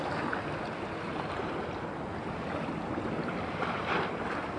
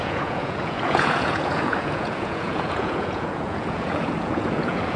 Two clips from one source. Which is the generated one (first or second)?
second